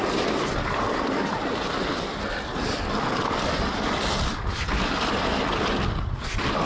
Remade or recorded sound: recorded